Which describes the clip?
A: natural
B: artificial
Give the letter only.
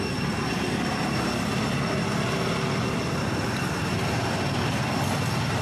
A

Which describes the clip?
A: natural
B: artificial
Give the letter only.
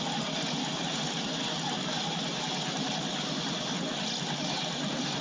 A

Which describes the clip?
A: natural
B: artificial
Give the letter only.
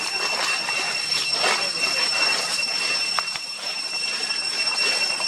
A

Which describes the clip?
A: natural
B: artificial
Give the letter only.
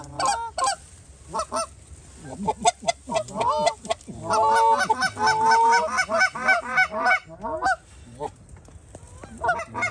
A